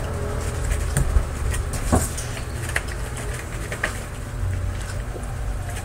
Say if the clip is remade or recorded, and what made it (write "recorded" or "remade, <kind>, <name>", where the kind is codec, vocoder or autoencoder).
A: recorded